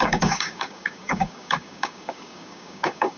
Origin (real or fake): fake